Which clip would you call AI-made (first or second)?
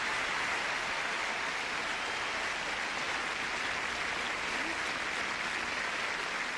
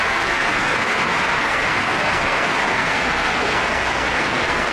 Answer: second